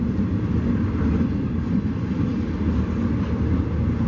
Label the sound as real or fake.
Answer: real